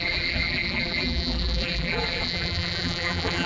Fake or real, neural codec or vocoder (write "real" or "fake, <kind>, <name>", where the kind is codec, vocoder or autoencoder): fake, vocoder, BigVGAN v2